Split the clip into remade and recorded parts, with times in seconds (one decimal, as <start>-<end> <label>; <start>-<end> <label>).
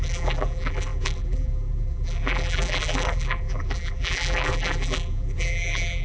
0.0-6.0 remade